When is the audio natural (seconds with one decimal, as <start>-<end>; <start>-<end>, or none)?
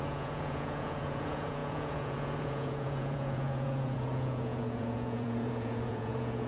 none